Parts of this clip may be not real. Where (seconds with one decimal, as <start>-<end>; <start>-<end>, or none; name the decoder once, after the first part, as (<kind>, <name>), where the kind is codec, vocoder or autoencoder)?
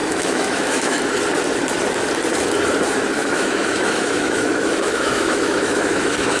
0.0-1.0 (autoencoder, DAC-VAE); 3.2-6.4